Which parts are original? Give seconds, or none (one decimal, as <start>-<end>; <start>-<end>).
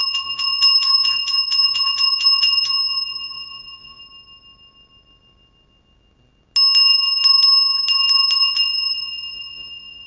4.0-8.4